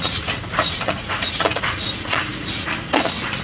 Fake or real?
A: fake